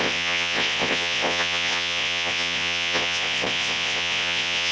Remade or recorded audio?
remade